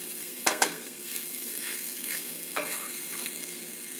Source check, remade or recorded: remade